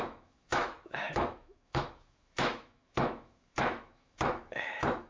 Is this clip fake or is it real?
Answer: fake